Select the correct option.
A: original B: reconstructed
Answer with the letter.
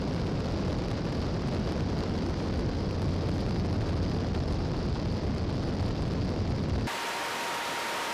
A